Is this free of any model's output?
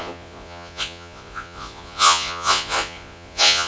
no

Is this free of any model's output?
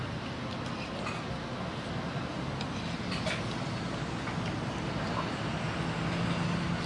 yes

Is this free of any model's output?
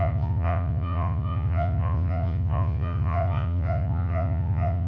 no